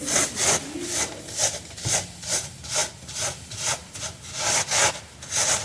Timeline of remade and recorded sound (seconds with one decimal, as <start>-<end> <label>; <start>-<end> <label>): 0.0-5.6 recorded